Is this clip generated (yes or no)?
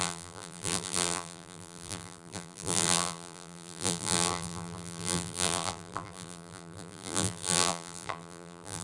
yes